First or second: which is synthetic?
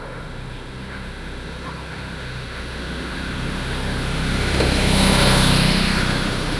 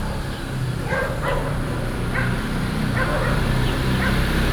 first